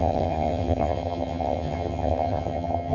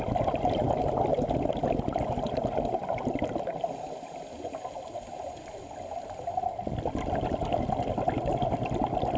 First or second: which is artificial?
first